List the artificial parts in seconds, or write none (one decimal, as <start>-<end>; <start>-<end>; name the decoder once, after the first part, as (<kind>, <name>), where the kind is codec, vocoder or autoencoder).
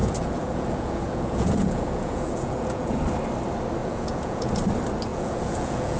0.0-3.0 (vocoder, Vocos); 3.8-4.5; 5.1-6.0